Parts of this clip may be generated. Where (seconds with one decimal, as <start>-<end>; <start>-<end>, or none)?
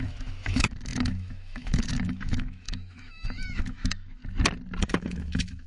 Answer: 0.0-4.2; 4.8-5.7